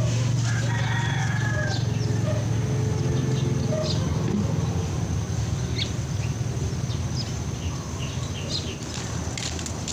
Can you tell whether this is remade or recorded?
recorded